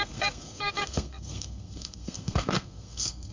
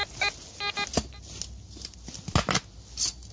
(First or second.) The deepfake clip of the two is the first